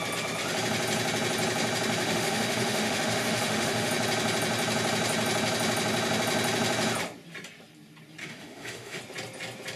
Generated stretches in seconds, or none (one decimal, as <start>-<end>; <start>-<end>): 2.0-3.9; 8.2-9.0